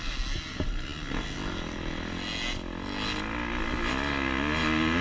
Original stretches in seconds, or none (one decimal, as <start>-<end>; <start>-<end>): 0.0-5.0